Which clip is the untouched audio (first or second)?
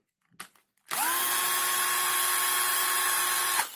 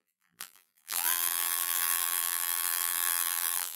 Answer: first